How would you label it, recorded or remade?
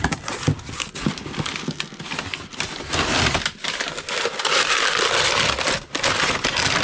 recorded